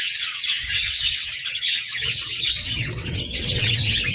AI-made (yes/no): yes